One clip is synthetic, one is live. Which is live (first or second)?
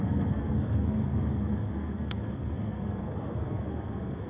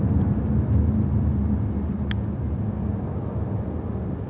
second